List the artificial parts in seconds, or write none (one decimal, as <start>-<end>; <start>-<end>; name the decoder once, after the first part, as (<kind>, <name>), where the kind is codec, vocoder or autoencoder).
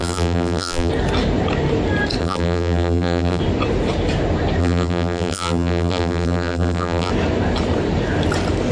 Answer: 0.0-0.9 (vocoder, BigVGAN v2); 2.2-3.4; 4.6-7.1